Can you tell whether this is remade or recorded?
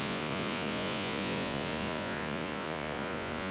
remade